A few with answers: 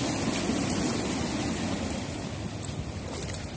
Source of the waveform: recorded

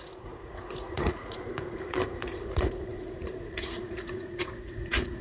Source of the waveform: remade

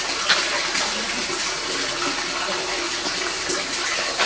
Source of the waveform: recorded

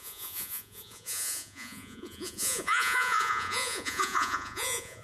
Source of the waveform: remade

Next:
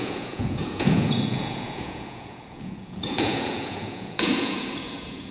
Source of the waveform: remade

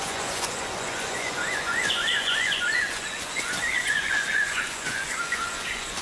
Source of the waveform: remade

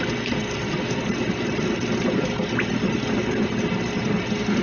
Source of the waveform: recorded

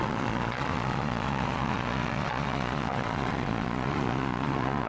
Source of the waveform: remade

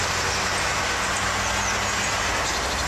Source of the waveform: recorded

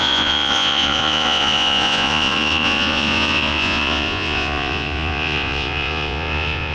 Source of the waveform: remade